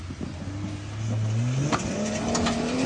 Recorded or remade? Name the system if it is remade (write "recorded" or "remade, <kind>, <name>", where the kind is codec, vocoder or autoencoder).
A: recorded